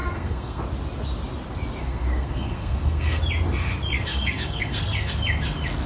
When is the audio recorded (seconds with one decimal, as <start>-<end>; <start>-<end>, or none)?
0.6-1.8; 3.2-3.9; 5.1-5.9